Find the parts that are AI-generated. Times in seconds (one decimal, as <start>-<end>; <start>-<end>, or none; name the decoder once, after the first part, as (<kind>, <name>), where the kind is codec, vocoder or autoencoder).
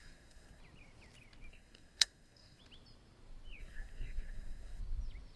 0.0-0.6 (codec, SNAC); 1.5-2.6; 3.6-4.8